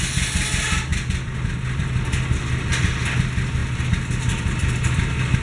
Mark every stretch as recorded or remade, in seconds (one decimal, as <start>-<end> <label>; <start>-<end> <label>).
0.0-5.4 recorded